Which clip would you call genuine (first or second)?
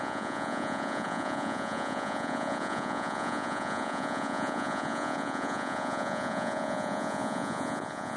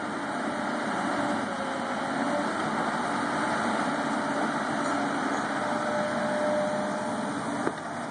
second